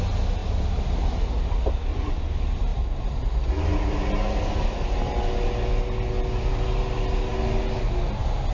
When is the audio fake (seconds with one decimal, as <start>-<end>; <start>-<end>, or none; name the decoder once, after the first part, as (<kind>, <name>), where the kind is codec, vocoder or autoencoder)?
none